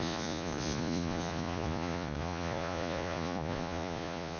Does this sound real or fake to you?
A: fake